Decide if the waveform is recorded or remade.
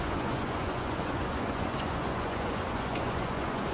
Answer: remade